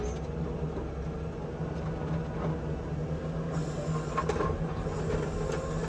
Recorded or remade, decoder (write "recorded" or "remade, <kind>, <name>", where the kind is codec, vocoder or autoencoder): recorded